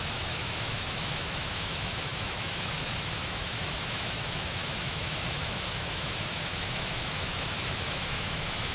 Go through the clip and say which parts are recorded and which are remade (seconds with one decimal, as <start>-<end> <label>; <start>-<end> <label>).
0.0-8.7 remade

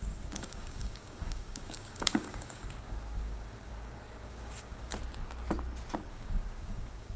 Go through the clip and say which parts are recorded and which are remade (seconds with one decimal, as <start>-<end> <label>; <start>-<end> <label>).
0.0-4.9 remade; 4.9-6.1 recorded; 6.1-7.2 remade

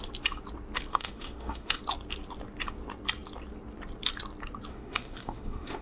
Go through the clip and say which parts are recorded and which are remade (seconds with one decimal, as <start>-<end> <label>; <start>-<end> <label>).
0.0-0.9 recorded; 0.9-1.8 remade; 1.8-4.7 recorded; 4.7-5.8 remade

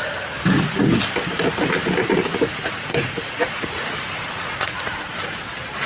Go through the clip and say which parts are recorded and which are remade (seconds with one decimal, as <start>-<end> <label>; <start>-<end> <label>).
0.0-2.2 recorded; 2.2-5.4 remade; 5.4-5.9 recorded